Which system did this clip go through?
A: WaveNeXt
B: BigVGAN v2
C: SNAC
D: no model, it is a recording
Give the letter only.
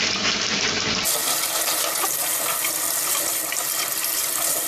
D